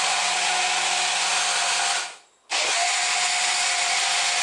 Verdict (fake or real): real